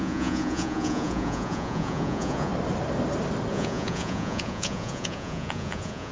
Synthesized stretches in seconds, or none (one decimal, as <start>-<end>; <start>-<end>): 0.0-2.5; 3.5-6.1